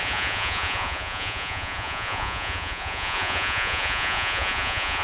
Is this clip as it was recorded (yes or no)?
no